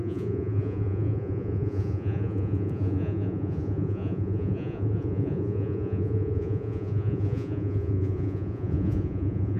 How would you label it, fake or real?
fake